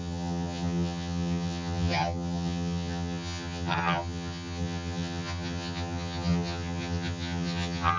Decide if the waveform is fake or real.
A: fake